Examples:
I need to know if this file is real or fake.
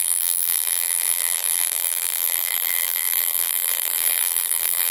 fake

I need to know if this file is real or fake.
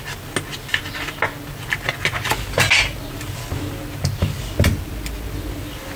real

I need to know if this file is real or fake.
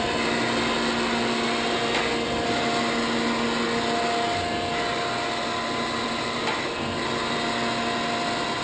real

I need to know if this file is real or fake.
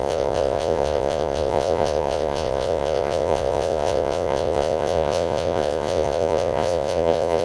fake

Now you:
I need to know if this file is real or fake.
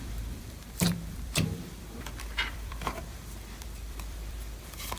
fake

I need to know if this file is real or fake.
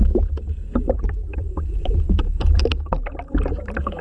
fake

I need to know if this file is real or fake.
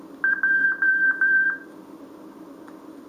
real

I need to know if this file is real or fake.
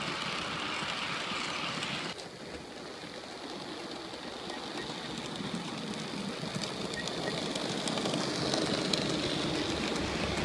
real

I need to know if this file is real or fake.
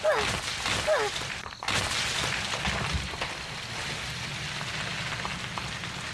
real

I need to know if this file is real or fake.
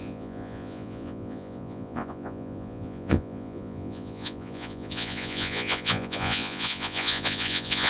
fake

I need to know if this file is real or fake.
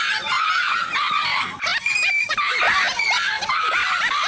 real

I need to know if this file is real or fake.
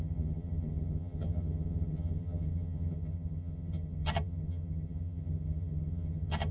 fake